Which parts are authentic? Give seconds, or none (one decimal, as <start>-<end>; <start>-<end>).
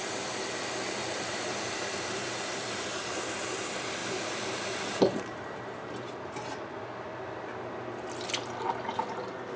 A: 0.0-1.0; 3.3-4.0; 6.1-9.6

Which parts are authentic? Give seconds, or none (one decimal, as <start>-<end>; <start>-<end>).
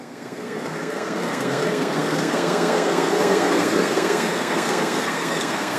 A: none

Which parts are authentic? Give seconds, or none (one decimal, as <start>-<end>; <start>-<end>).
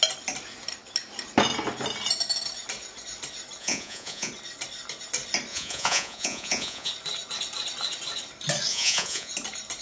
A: 0.0-3.6; 4.3-5.5; 6.9-8.7; 9.3-9.8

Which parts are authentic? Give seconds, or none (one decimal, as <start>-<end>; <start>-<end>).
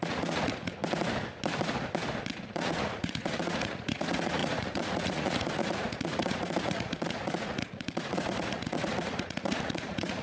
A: 0.8-2.4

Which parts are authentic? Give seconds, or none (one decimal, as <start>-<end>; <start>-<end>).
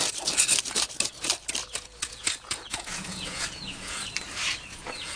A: 0.0-1.6; 4.0-4.7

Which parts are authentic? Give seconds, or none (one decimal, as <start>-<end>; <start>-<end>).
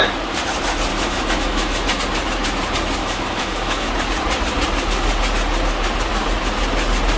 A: 0.0-0.9; 2.0-3.0; 3.9-7.2